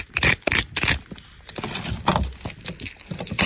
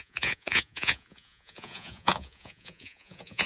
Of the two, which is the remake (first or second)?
second